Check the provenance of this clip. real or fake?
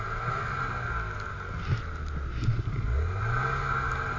real